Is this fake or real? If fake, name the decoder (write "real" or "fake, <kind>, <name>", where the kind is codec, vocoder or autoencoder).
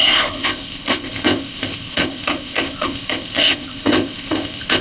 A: fake, codec, ZipCodec